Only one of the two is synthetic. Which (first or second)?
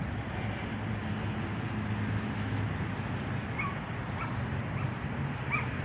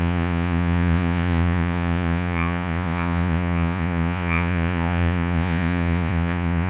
second